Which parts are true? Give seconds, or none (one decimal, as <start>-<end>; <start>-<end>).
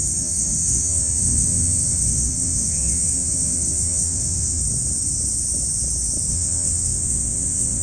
4.6-6.3